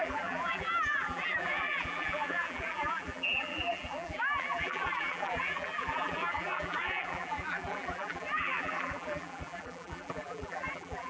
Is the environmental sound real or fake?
fake